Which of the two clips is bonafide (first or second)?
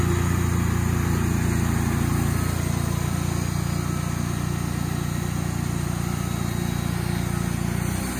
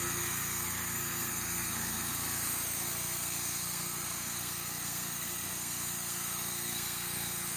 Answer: first